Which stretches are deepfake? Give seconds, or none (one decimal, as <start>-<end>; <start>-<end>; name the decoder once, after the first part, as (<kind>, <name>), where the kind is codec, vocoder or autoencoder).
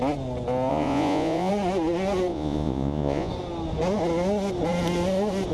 0.7-1.5 (vocoder, Vocos); 2.3-3.3